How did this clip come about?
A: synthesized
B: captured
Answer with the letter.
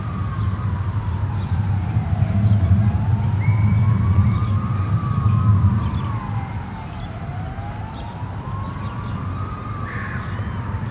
B